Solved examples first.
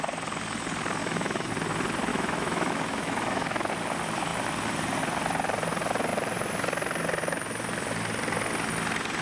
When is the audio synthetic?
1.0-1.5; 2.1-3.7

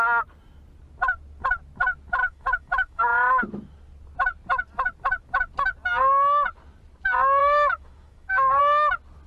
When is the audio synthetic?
2.2-3.0; 7.4-8.6

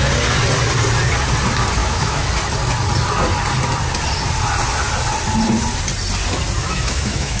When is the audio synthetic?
1.8-2.3; 6.6-7.4

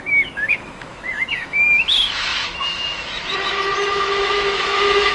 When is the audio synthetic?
0.0-5.1